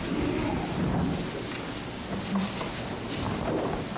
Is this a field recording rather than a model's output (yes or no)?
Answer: yes